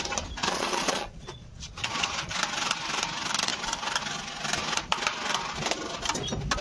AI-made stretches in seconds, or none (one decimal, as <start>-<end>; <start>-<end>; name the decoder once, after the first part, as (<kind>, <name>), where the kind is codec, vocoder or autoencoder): 0.4-2.4 (vocoder, Vocos)